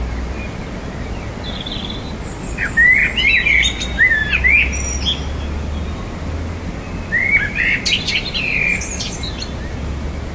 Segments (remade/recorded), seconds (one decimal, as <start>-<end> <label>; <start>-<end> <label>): 0.0-10.3 recorded